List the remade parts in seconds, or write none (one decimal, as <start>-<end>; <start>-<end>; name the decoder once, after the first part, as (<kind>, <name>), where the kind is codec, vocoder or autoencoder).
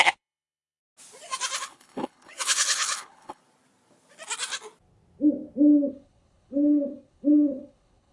0.0-0.8 (codec, HILCodec); 1.6-3.4; 5.9-8.1